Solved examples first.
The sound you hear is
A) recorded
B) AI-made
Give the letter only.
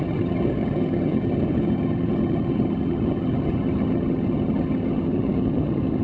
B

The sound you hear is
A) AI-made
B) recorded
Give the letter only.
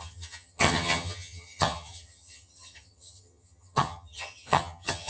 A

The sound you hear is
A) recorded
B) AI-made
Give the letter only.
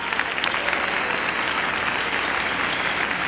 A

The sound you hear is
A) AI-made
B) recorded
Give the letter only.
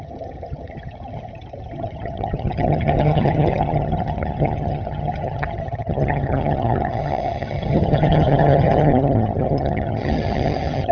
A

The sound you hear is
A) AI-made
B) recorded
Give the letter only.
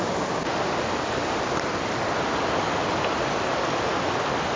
B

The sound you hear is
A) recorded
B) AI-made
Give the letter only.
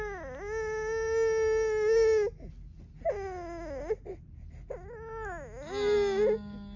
A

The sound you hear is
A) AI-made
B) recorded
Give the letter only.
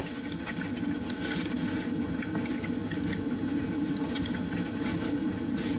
A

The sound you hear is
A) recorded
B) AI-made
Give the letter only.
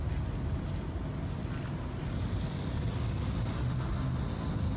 A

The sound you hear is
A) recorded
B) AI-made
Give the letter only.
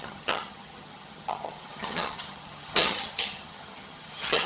B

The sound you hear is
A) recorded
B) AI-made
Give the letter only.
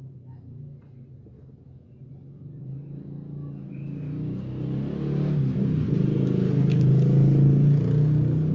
A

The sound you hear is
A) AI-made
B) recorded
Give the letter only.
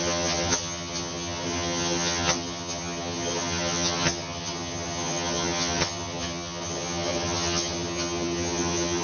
A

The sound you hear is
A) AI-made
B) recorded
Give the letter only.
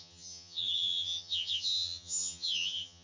A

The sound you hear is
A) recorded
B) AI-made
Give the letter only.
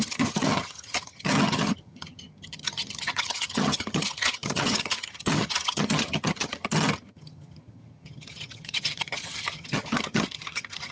B